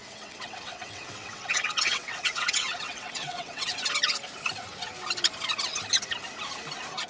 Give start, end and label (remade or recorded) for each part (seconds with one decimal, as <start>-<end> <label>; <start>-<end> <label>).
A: 0.0-3.7 remade; 3.7-7.1 recorded